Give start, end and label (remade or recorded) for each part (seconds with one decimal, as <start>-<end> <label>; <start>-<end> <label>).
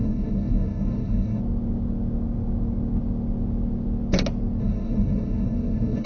0.0-1.4 remade; 1.4-4.6 recorded; 4.6-6.1 remade